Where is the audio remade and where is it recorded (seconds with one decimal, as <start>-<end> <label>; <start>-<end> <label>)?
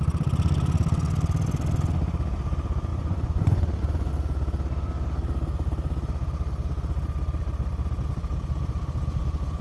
0.0-2.9 recorded; 2.9-4.1 remade; 4.1-9.6 recorded